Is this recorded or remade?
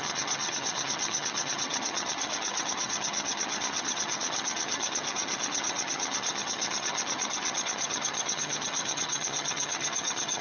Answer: remade